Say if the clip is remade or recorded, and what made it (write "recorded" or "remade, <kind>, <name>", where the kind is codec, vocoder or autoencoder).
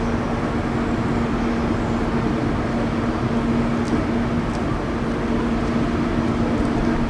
recorded